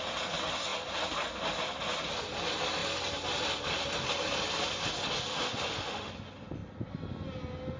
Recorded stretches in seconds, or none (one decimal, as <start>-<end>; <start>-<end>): 0.0-5.3; 6.1-7.8